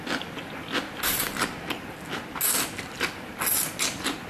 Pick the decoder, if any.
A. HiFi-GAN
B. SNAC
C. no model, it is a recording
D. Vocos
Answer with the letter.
C